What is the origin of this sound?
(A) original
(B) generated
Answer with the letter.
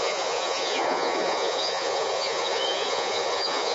B